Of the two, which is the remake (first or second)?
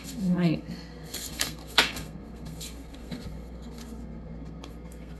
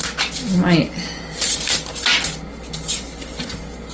first